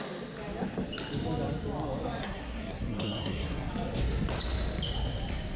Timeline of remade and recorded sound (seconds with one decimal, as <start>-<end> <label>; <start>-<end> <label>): 0.0-2.2 recorded; 2.2-3.7 remade; 3.7-5.6 recorded